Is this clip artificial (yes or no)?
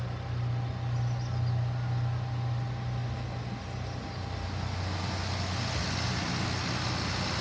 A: no